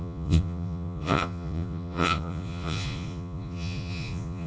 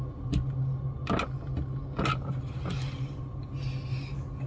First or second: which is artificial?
first